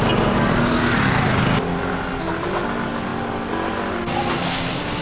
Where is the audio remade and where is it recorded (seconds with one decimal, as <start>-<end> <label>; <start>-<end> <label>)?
0.0-5.0 recorded